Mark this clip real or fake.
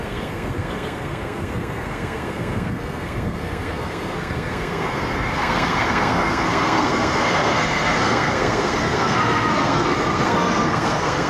fake